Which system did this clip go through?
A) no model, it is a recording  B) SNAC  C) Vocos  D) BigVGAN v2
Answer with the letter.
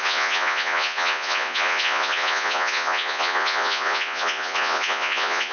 C